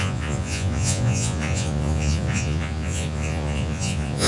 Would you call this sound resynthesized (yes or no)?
yes